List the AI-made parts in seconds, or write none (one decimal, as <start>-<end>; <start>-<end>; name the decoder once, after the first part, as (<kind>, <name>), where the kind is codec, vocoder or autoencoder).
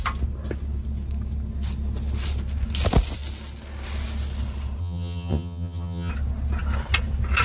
4.8-6.1 (vocoder, HiFi-GAN)